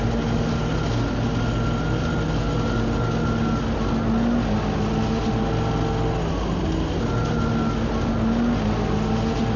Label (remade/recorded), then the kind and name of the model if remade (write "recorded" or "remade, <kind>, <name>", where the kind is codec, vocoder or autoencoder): recorded